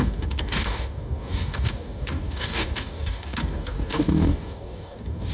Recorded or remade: remade